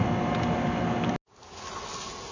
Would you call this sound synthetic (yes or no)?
no